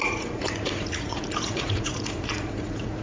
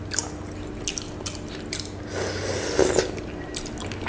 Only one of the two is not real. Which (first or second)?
first